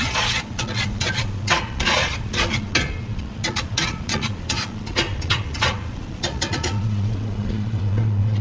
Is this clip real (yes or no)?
no